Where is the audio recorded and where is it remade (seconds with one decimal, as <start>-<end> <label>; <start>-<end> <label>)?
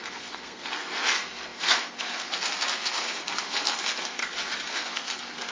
0.0-4.2 remade; 4.2-4.7 recorded; 4.7-5.5 remade